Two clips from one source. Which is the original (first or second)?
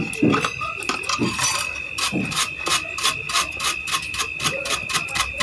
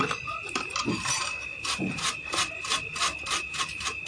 first